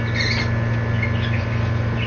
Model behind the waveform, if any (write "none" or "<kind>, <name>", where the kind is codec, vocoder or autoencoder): none